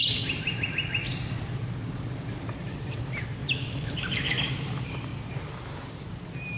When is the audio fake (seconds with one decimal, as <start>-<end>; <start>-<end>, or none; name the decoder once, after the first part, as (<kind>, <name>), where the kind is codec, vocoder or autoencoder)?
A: 3.4-4.5 (autoencoder, DAC-VAE)